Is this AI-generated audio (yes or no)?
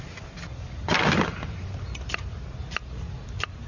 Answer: no